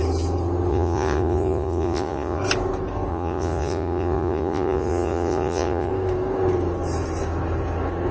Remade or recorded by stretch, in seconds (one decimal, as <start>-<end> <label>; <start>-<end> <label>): 0.0-0.7 recorded; 0.7-2.4 remade; 2.4-3.1 recorded; 3.1-5.9 remade; 5.9-8.1 recorded